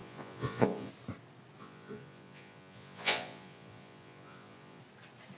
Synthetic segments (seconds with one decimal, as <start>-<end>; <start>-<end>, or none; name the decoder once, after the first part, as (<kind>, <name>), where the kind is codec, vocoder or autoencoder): 0.0-0.9 (vocoder, Vocos); 1.6-4.8